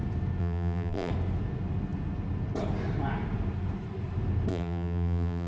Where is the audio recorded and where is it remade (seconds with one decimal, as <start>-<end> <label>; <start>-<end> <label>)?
0.0-0.4 recorded; 0.4-1.1 remade; 1.1-4.5 recorded; 4.5-5.5 remade